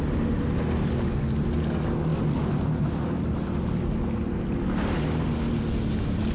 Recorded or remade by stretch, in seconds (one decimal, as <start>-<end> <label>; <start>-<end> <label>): 0.0-6.3 recorded